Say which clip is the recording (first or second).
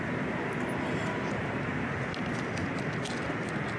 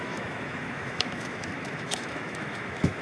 first